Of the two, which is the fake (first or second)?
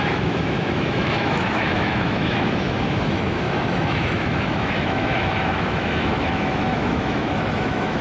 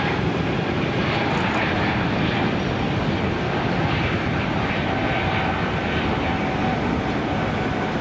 first